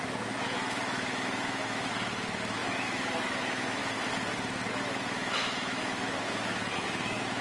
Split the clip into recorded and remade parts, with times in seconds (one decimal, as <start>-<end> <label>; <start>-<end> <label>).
0.0-3.8 remade; 3.8-4.7 recorded; 4.7-7.4 remade